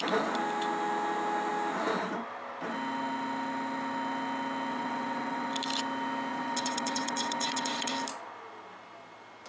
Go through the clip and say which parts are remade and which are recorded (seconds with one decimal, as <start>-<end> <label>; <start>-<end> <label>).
0.0-4.7 recorded; 4.7-5.5 remade; 5.5-6.3 recorded; 6.3-7.9 remade; 7.9-9.5 recorded